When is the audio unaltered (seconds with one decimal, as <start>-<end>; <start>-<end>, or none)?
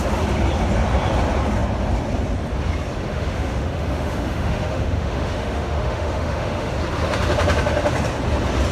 0.0-3.1; 6.7-8.7